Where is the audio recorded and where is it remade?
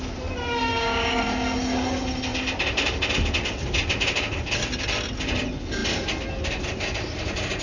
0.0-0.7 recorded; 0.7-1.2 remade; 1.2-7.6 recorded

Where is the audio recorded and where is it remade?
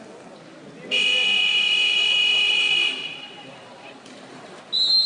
0.0-1.5 recorded; 1.5-4.6 remade; 4.6-5.1 recorded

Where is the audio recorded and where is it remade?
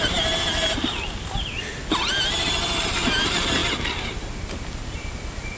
0.0-5.6 recorded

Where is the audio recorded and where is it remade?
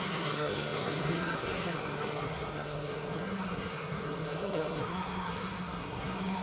0.0-6.4 remade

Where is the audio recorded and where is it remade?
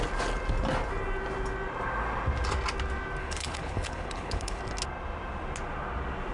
0.0-3.2 recorded; 3.2-4.6 remade; 4.6-6.3 recorded